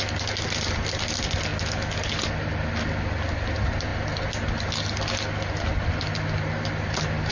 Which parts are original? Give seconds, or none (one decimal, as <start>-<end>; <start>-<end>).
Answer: 0.0-7.3